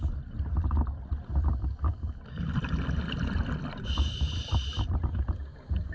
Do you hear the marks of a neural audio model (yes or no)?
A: no